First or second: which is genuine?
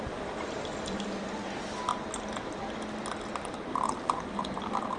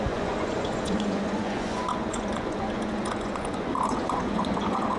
first